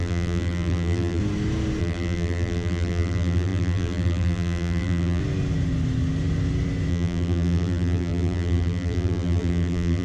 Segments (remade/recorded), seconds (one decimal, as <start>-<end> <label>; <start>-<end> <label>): 0.0-1.2 remade; 1.2-1.8 recorded; 1.8-5.2 remade; 5.2-6.9 recorded; 6.9-10.0 remade